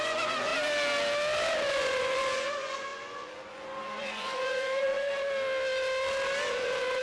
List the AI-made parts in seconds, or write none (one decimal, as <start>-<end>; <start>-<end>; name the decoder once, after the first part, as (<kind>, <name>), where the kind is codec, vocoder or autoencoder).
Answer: 0.0-0.5 (vocoder, Vocos); 1.7-5.1; 6.5-7.0